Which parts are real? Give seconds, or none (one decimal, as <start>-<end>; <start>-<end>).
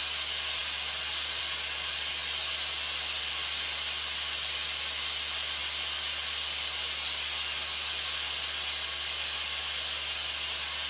0.0-10.9